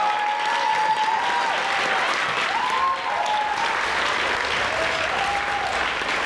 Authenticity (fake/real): real